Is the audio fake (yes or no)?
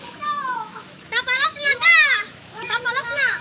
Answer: yes